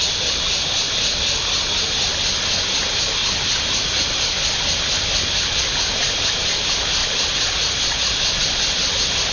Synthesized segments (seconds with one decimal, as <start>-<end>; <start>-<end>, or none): none